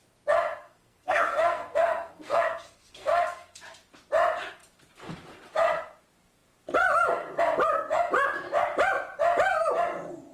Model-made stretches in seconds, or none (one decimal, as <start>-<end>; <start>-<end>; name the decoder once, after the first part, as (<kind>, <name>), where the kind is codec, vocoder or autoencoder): 0.6-3.6 (codec, SNAC)